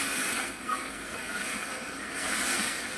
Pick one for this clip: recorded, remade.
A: remade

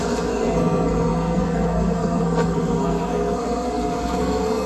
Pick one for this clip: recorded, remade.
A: remade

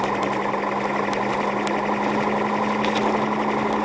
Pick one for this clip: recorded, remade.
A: recorded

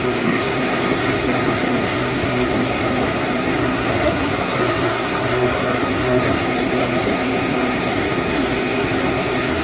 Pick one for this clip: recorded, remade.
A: remade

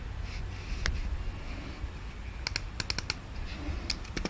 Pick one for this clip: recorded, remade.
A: recorded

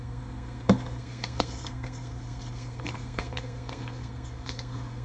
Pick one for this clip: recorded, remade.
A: remade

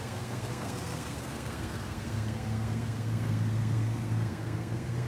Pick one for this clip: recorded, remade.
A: remade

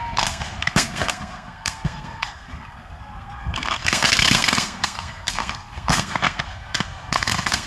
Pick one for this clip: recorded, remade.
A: remade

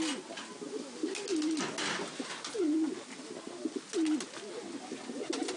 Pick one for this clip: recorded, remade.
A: recorded